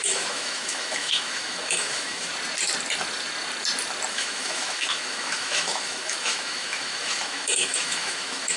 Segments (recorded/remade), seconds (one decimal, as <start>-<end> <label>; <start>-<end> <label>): 0.0-2.3 remade; 2.3-4.1 recorded; 4.1-8.6 remade